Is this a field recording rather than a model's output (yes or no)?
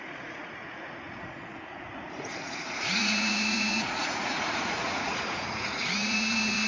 no